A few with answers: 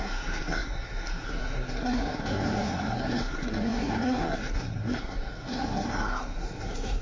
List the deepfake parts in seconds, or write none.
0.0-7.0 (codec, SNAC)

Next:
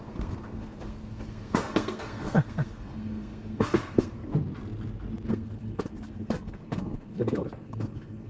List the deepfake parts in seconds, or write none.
0.0-4.2 (codec, SNAC); 5.3-8.3

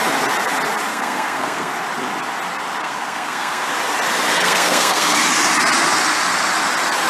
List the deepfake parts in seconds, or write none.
0.9-1.7 (codec, SNAC); 2.8-3.7; 4.3-5.2

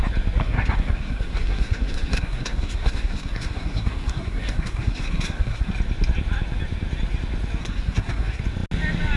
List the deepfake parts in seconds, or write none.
0.4-5.7 (codec, SNAC); 7.6-8.4